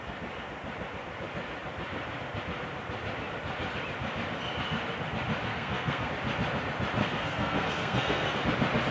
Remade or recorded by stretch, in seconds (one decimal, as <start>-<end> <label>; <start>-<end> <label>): 0.0-5.5 recorded; 5.5-6.1 remade; 6.1-7.0 recorded; 7.0-8.4 remade; 8.4-8.9 recorded